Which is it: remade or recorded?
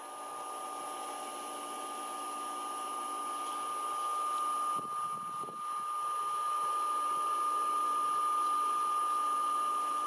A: recorded